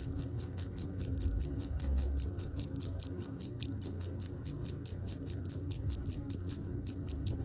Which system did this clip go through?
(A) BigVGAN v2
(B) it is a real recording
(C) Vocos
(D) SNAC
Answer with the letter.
D